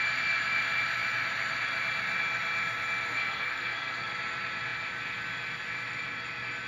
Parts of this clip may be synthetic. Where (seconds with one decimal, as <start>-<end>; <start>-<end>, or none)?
3.1-4.1